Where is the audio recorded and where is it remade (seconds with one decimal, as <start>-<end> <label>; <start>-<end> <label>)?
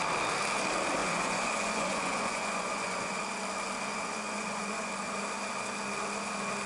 0.0-1.0 recorded; 1.0-3.2 remade; 3.2-3.9 recorded; 3.9-4.9 remade; 4.9-6.7 recorded